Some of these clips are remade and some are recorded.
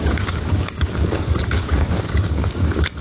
remade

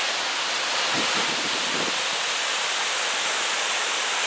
recorded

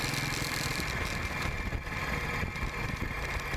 recorded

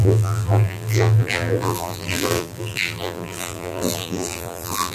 remade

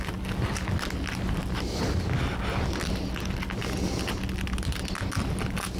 recorded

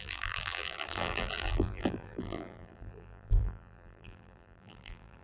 remade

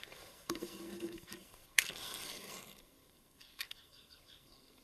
remade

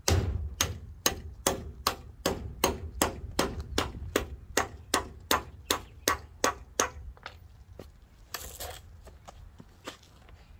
recorded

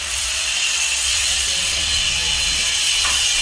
remade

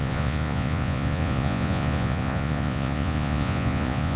remade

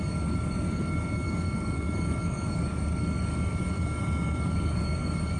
remade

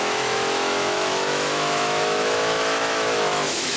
remade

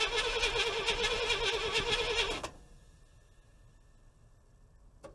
recorded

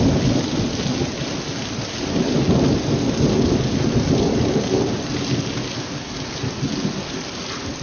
recorded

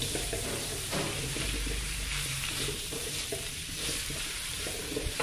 remade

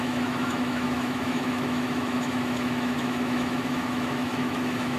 remade